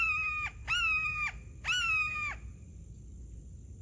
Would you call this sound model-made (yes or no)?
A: no